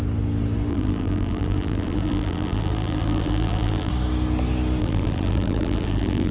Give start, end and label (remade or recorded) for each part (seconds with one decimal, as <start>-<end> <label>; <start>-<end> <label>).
0.0-0.7 recorded; 0.7-3.9 remade; 3.9-4.8 recorded; 4.8-6.3 remade